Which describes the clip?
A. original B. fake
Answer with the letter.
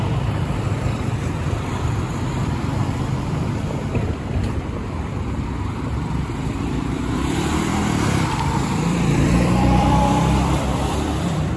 B